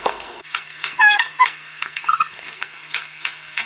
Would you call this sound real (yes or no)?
no